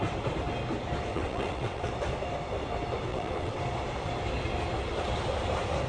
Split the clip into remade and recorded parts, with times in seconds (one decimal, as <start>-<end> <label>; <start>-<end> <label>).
0.0-1.1 recorded; 1.1-1.9 remade; 1.9-3.1 recorded; 3.1-3.6 remade; 3.6-5.9 recorded